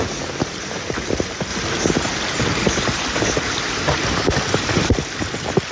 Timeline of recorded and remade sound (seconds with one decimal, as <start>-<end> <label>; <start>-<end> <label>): 0.0-5.7 recorded